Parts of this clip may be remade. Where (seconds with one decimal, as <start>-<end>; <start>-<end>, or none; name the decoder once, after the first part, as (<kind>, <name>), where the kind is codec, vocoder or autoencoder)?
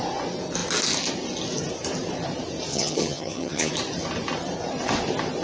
2.7-3.7 (vocoder, HiFi-GAN)